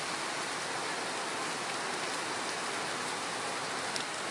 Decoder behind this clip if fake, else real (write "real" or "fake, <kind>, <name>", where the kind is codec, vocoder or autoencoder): real